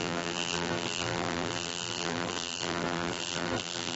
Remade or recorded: remade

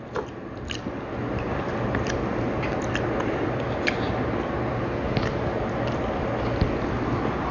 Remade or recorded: recorded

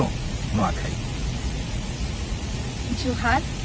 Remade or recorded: remade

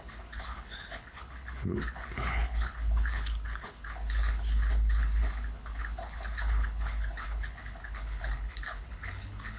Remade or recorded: remade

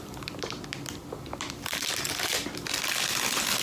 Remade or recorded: remade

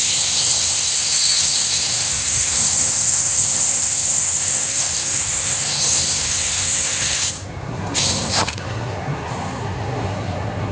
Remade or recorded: remade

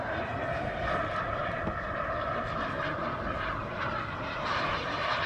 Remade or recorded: remade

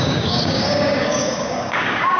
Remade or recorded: remade